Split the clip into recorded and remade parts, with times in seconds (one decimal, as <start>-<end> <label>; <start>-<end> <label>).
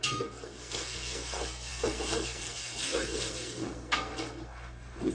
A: 0.0-5.1 remade